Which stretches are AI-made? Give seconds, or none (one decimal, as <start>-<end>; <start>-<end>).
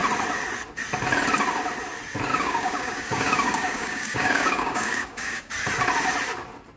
2.3-5.5